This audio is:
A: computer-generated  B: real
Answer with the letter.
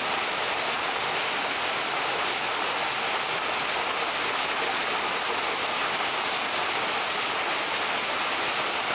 B